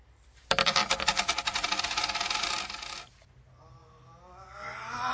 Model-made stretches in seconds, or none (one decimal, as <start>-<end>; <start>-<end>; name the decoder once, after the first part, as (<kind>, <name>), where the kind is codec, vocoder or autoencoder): none